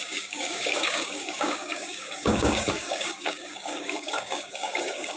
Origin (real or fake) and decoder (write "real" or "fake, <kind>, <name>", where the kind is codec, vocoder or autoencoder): fake, codec, DAC